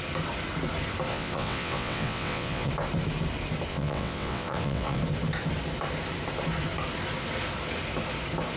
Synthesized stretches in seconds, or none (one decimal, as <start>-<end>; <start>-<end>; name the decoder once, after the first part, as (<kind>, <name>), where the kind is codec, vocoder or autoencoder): 1.1-2.7 (vocoder, WaveNeXt); 3.7-5.0